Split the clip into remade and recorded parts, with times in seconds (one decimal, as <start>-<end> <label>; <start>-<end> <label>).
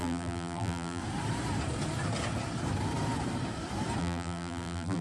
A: 0.0-1.0 remade; 1.0-4.0 recorded; 4.0-5.0 remade